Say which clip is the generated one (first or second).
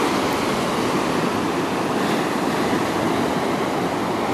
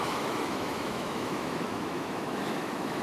second